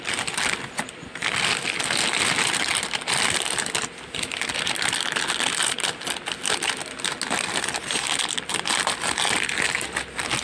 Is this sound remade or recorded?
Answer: recorded